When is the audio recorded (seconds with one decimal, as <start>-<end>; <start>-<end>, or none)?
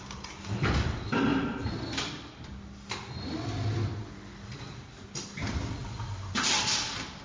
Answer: none